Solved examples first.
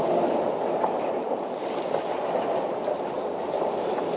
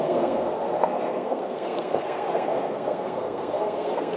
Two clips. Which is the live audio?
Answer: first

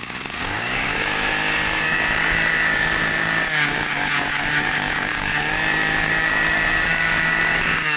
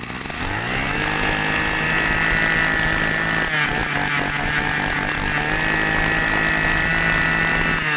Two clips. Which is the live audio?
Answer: second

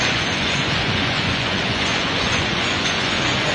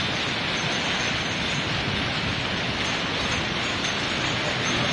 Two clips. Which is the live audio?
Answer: second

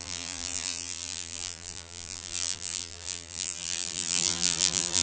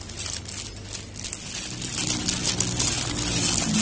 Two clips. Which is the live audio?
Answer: second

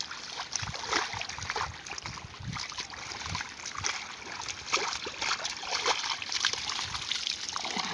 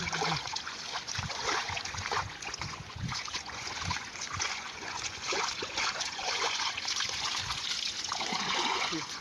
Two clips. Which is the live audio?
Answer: first